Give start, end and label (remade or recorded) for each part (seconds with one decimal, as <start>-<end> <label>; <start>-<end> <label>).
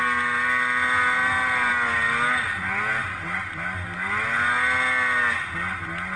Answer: 0.0-6.2 recorded